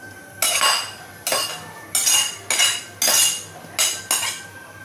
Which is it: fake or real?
real